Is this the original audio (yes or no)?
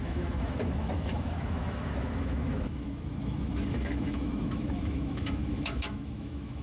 no